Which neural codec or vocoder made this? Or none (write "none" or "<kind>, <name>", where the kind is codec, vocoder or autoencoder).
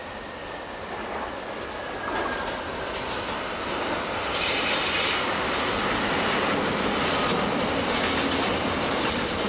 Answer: none